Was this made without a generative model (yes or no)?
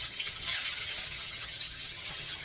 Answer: no